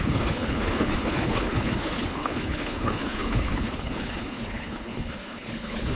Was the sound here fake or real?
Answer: fake